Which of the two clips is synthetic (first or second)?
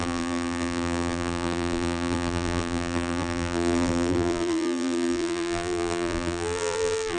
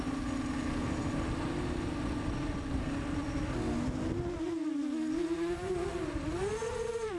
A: first